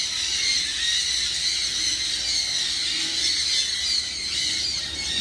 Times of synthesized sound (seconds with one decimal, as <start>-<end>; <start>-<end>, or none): none